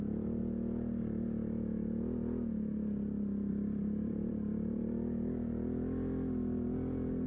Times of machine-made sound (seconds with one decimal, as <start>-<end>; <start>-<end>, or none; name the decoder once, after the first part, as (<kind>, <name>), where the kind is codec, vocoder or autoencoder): 0.0-0.4 (vocoder, BigVGAN v2); 3.5-7.3